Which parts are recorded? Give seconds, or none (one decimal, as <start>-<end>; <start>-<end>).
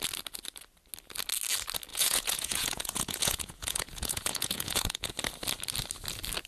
0.0-1.9; 5.1-6.5